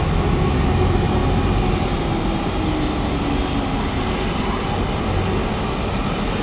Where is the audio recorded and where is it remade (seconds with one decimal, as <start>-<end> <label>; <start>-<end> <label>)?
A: 0.0-6.4 recorded